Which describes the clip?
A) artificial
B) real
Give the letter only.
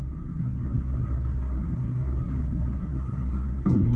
A